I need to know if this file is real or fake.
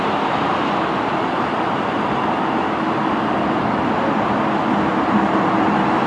real